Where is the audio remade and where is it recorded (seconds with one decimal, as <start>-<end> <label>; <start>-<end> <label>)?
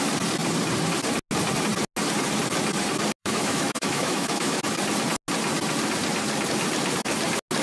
0.0-3.2 recorded; 3.2-4.6 remade; 4.6-7.6 recorded